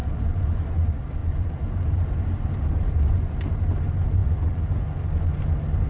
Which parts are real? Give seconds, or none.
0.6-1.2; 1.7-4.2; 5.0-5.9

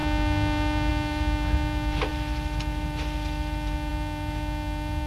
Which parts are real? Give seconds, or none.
0.0-5.1

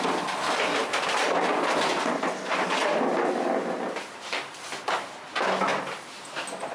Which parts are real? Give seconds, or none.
0.0-6.7

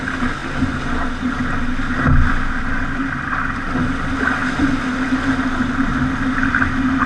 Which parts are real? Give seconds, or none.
0.0-7.1